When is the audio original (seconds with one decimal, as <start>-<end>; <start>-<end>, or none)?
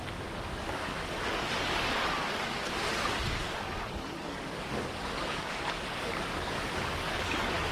0.0-0.6